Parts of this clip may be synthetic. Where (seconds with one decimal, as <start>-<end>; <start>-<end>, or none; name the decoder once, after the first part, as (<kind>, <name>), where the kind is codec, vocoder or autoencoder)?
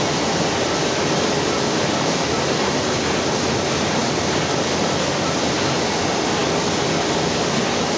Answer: none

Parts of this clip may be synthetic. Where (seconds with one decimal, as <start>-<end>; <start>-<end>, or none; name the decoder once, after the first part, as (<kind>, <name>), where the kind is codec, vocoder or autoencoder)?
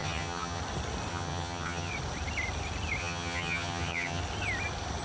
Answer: 0.0-0.6 (vocoder, HiFi-GAN); 1.1-1.9; 3.0-4.2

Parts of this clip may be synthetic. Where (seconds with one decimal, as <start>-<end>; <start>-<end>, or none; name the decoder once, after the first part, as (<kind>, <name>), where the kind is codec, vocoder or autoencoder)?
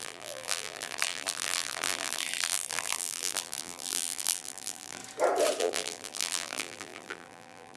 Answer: 0.0-5.0 (vocoder, BigVGAN v2); 5.6-7.8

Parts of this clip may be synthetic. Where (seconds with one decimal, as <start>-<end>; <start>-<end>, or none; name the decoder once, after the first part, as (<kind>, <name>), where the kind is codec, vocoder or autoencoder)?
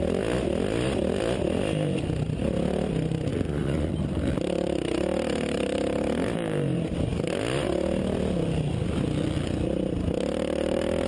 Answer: 3.3-3.9 (vocoder, Vocos)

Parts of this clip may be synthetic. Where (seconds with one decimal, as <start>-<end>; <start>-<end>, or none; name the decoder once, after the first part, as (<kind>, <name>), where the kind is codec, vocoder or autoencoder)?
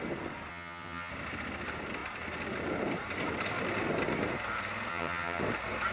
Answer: 0.5-1.1 (vocoder, HiFi-GAN); 4.9-5.4